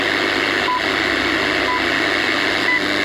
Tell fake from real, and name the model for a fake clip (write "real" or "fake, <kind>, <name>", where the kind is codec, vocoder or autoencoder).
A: real